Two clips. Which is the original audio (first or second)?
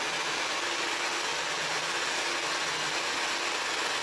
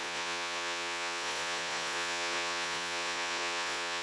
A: first